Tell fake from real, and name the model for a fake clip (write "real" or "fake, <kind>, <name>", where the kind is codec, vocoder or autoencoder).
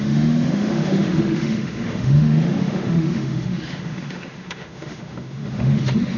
fake, autoencoder, DAC-VAE